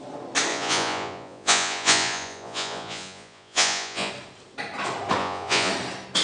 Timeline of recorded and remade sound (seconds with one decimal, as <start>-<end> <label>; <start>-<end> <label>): 0.0-0.5 recorded; 0.5-4.1 remade; 4.1-5.2 recorded; 5.2-5.7 remade; 5.7-6.2 recorded